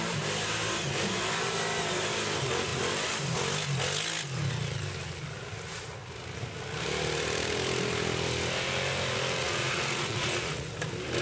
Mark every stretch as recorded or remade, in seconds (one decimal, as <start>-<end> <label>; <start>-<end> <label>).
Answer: 0.0-9.4 recorded; 9.4-10.7 remade; 10.7-11.2 recorded